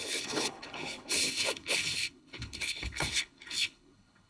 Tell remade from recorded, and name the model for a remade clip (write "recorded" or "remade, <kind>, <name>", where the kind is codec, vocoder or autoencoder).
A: remade, codec, HILCodec